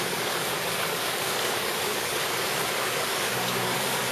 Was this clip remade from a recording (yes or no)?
yes